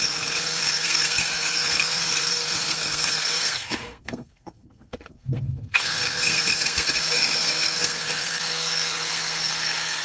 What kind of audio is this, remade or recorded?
remade